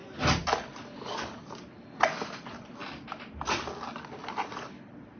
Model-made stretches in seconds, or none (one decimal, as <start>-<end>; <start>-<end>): none